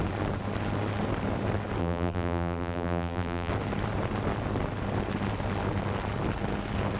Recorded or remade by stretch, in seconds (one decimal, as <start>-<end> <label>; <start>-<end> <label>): 0.0-1.8 recorded; 1.8-3.5 remade; 3.5-7.0 recorded